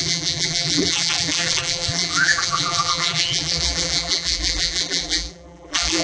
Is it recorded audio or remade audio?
remade